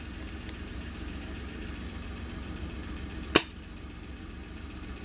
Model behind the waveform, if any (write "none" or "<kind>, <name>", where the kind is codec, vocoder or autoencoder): none